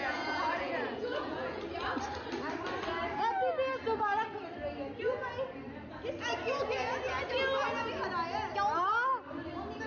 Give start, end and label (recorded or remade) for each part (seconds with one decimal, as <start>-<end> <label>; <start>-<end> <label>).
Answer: 0.0-1.6 remade; 1.6-9.9 recorded